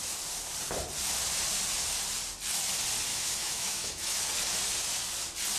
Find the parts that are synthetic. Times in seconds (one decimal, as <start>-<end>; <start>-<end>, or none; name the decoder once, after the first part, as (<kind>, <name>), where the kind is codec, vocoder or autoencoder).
3.1-4.2 (autoencoder, DAC-VAE)